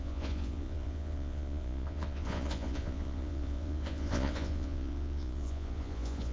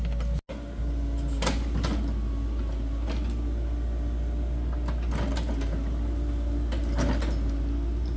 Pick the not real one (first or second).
first